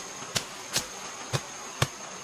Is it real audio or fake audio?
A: real